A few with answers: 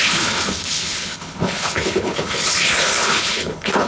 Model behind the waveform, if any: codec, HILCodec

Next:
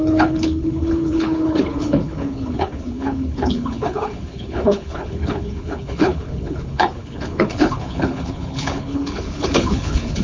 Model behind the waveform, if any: codec, HILCodec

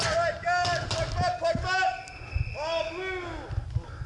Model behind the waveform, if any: none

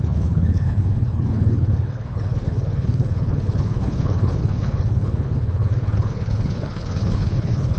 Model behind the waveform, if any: codec, HILCodec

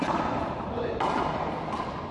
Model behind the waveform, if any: none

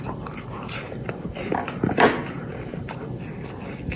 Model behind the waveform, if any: none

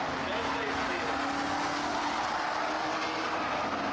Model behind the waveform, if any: none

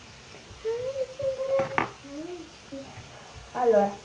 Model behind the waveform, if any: none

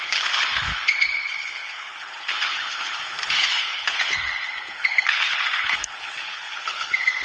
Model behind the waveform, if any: codec, HILCodec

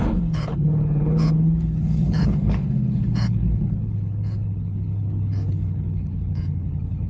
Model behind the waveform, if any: codec, HILCodec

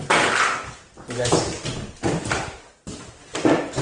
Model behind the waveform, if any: none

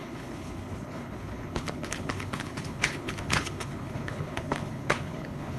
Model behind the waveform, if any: codec, HILCodec